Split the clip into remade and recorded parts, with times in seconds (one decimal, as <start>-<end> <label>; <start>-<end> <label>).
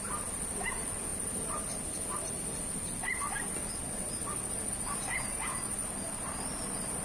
0.0-1.1 remade; 1.1-2.3 recorded; 2.3-3.8 remade; 3.8-5.8 recorded; 5.8-7.0 remade